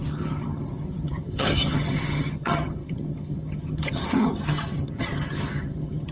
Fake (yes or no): yes